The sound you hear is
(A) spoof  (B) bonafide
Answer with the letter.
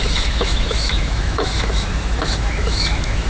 A